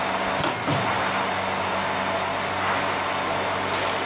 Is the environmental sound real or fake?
real